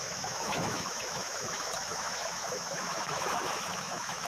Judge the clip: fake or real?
fake